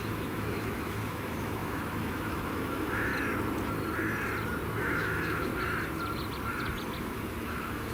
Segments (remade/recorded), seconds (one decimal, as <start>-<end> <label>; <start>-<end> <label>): 0.0-3.1 remade; 3.1-4.8 recorded; 4.8-5.5 remade; 5.5-7.0 recorded; 7.0-7.9 remade